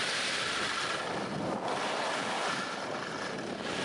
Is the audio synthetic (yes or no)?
no